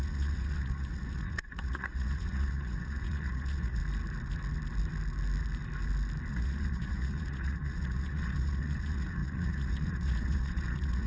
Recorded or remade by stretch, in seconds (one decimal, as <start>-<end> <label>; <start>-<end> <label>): 0.0-3.8 remade; 3.8-6.3 recorded; 6.3-11.1 remade